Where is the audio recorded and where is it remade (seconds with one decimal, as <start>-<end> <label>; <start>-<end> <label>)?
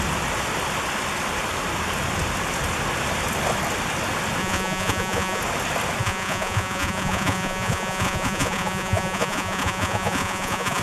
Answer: 0.0-4.4 recorded; 4.4-5.4 remade; 5.4-6.0 recorded; 6.0-10.8 remade